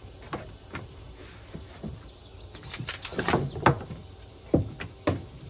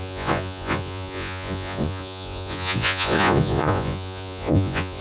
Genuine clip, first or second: first